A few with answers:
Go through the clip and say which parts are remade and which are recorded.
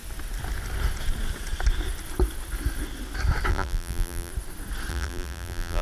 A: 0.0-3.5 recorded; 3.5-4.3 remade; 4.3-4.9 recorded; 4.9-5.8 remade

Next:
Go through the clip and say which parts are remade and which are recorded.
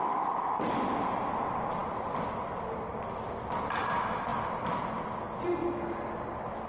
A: 0.0-6.7 recorded